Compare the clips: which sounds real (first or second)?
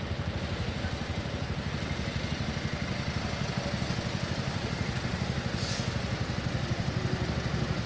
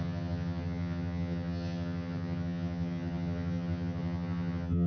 first